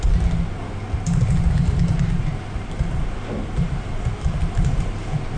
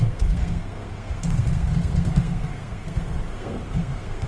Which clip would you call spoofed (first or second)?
second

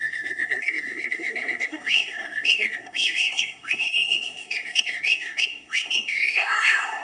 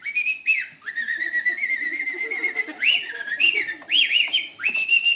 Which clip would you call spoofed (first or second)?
first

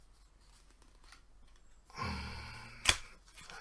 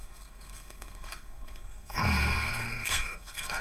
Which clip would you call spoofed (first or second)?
second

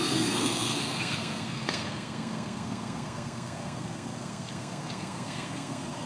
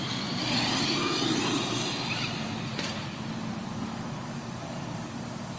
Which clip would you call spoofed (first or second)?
first